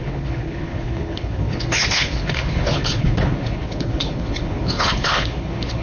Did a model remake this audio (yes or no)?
yes